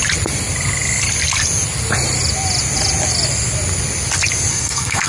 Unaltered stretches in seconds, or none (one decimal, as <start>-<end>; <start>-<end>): 0.0-4.5